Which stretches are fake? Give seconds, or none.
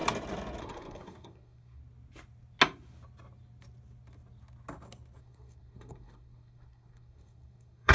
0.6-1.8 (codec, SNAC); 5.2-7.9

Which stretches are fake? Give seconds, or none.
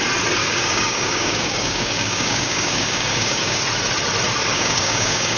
0.4-3.6 (codec, DAC); 4.5-5.4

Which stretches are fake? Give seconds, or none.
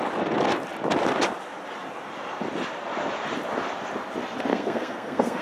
4.5-5.4 (codec, SNAC)